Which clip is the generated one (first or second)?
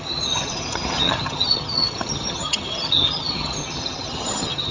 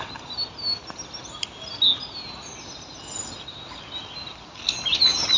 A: first